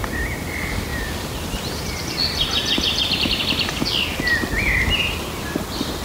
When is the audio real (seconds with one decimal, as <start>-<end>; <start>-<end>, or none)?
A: 0.0-0.9; 3.4-6.0